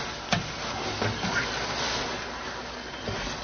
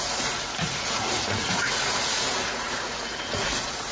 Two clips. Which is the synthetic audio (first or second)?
second